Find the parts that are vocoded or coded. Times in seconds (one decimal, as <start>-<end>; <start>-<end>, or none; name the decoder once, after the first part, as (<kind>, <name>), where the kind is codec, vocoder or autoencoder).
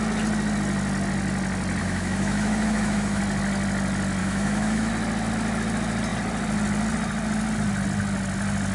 1.8-3.2 (autoencoder, DAC-VAE); 4.2-4.9